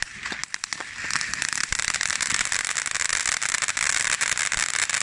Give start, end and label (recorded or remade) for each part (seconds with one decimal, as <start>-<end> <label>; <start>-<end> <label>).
0.0-5.0 recorded